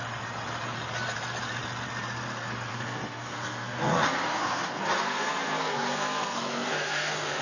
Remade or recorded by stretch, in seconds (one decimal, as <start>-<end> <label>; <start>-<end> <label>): 0.0-2.7 recorded; 2.7-7.4 remade